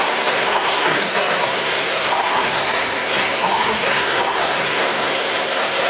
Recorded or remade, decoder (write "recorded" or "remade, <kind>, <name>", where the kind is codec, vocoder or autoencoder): remade, codec, SNAC